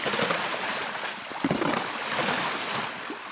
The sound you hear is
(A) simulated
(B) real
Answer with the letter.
B